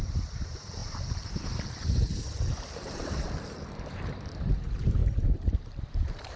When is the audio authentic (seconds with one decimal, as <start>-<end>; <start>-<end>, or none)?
none